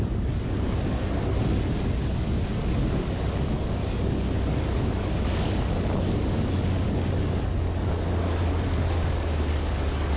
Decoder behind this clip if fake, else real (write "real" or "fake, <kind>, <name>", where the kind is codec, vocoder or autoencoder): fake, codec, DAC